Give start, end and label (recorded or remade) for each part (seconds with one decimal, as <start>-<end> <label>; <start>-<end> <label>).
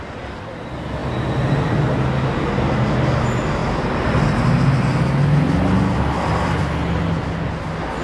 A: 0.0-8.0 recorded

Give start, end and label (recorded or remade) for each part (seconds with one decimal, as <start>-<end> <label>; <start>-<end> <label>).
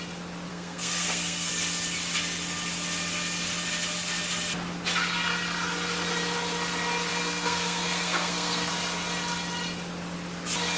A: 0.0-0.5 recorded; 0.5-1.5 remade; 1.5-7.1 recorded; 7.1-8.7 remade; 8.7-10.8 recorded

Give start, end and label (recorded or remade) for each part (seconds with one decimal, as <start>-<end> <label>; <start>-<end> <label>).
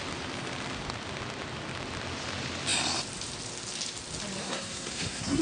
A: 0.0-4.4 recorded; 4.4-5.4 remade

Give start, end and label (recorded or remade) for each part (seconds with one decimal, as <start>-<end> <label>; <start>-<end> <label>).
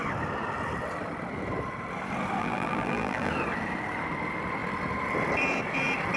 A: 0.0-2.4 recorded; 2.4-3.3 remade; 3.3-6.2 recorded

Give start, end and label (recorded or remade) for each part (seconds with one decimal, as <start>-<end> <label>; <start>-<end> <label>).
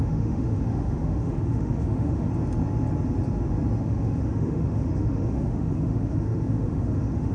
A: 0.0-2.3 remade; 2.3-3.8 recorded; 3.8-7.3 remade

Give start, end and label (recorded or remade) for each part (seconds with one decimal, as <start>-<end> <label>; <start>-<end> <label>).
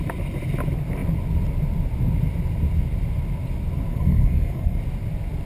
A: 0.0-3.9 recorded; 3.9-4.8 remade; 4.8-5.5 recorded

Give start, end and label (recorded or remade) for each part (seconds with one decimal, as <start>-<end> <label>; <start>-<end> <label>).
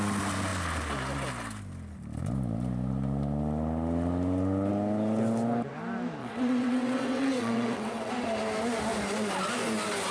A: 0.0-6.2 recorded; 6.2-8.1 remade; 8.1-10.1 recorded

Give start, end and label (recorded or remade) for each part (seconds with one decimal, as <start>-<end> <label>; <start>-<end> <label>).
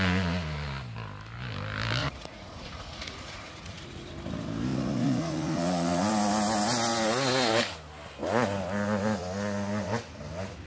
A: 0.0-2.0 recorded; 2.0-4.1 remade; 4.1-4.7 recorded; 4.7-6.1 remade; 6.1-10.7 recorded